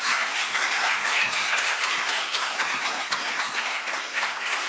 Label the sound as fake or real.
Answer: fake